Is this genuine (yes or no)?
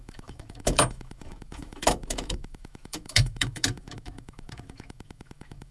no